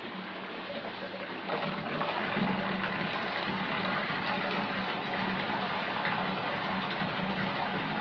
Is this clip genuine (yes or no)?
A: yes